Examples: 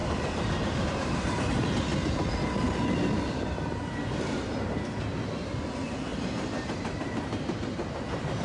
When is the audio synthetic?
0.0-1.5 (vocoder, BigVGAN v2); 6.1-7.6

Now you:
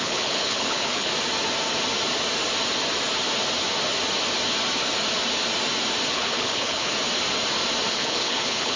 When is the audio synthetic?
0.0-1.1 (codec, HILCodec); 6.1-6.9; 7.9-8.8

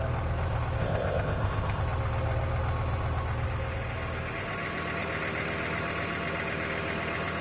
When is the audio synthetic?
0.8-1.8 (codec, ZipCodec)

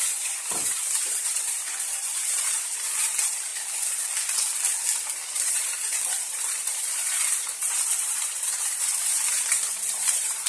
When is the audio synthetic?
0.0-3.5 (vocoder, BigVGAN v2); 5.4-10.5

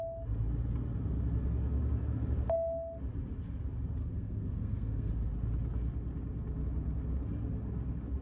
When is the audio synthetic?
4.0-5.1 (codec, SNAC)

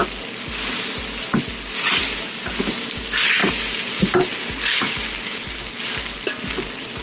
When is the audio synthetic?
none

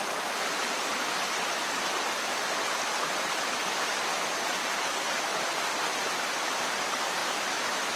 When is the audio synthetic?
7.2-8.0 (autoencoder, DAC-VAE)

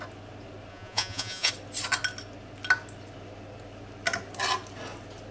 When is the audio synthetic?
0.7-1.5 (vocoder, Vocos)